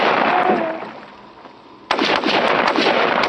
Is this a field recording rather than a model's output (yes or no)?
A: yes